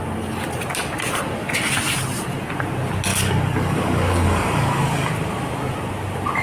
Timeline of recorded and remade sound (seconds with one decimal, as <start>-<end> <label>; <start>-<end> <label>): 0.0-3.1 recorded; 3.1-5.1 remade; 5.1-6.4 recorded